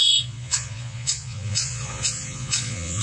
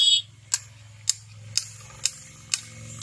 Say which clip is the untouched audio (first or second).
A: second